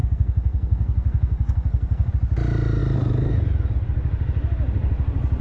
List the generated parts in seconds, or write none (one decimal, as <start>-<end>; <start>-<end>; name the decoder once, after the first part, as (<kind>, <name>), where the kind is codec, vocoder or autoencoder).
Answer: 0.0-2.1 (codec, SNAC)